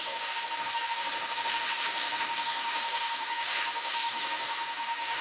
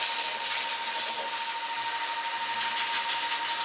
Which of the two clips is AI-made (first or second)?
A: first